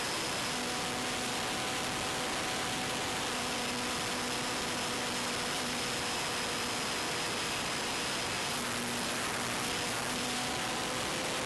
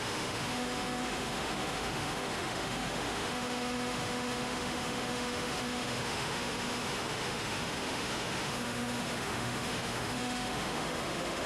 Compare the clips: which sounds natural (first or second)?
first